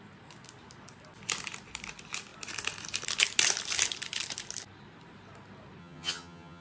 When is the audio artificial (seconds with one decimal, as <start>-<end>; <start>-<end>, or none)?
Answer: 5.8-6.6